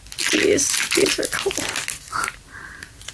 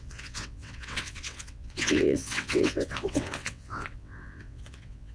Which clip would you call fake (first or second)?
second